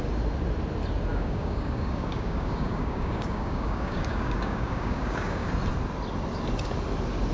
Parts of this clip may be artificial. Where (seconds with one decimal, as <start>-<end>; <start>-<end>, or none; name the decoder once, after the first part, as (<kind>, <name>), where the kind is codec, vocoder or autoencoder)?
1.1-5.5 (codec, DAC)